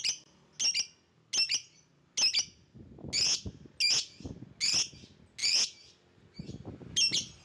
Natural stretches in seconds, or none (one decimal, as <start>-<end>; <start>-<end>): 0.0-7.4